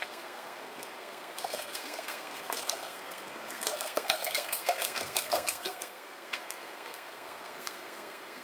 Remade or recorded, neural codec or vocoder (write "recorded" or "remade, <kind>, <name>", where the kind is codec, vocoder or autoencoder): remade, codec, SNAC